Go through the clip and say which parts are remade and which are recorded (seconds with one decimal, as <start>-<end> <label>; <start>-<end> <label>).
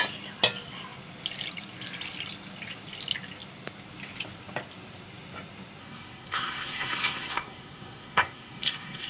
0.0-5.8 recorded; 5.8-9.1 remade